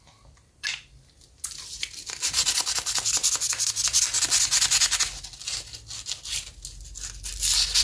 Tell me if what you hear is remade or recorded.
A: recorded